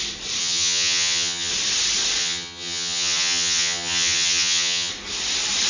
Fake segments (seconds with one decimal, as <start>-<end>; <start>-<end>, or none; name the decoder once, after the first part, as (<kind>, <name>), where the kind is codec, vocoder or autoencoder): 0.4-1.5 (vocoder, HiFi-GAN); 2.2-4.9